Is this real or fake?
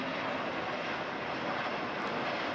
real